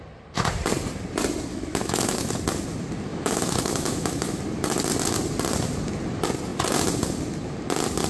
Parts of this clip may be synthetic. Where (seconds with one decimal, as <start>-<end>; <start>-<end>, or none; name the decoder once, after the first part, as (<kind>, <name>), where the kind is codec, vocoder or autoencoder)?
1.5-2.3 (autoencoder, DAC-VAE); 3.1-4.4